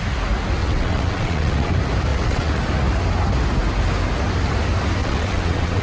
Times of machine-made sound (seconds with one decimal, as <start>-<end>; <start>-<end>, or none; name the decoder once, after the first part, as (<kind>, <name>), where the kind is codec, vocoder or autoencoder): 0.6-1.7 (vocoder, WaveNeXt); 2.1-2.6; 5.0-5.8